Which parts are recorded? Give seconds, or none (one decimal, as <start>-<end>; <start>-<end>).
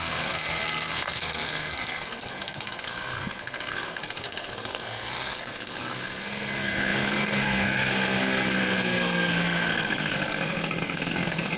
none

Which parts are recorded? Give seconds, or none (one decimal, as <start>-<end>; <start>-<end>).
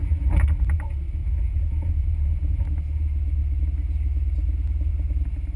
0.0-1.2; 2.6-5.6